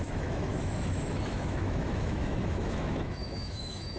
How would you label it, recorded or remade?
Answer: remade